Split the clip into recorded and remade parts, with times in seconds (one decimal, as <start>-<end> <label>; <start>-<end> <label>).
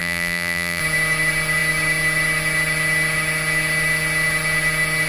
0.0-0.8 remade; 0.8-5.1 recorded